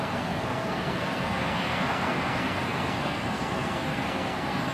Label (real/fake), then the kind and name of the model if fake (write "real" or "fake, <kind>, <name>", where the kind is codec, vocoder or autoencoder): fake, codec, SNAC